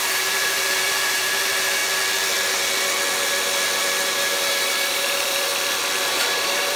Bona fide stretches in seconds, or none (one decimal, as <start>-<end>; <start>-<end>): 1.8-4.7; 5.5-6.1